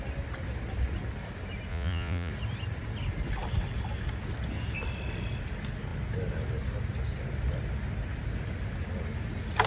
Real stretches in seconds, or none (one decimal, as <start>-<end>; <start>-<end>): 0.0-1.7; 2.3-9.7